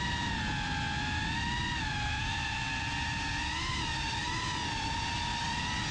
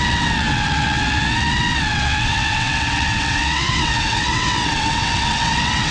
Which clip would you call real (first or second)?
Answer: first